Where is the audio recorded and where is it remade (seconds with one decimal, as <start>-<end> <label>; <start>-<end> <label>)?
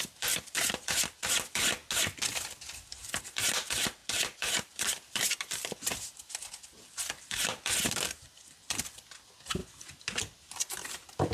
0.0-1.8 remade; 1.8-2.9 recorded; 2.9-9.6 remade; 9.6-10.5 recorded; 10.5-11.3 remade